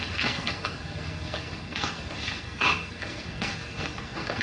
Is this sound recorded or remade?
remade